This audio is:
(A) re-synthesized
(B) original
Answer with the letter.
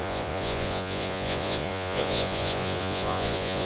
A